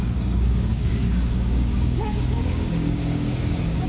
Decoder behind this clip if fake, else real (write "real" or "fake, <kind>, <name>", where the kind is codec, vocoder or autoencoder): fake, codec, DAC